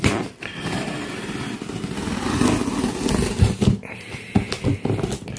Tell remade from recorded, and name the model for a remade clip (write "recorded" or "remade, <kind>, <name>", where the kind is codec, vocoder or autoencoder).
recorded